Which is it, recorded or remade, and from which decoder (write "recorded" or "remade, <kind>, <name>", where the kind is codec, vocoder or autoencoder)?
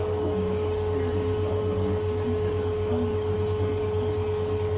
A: remade, codec, DAC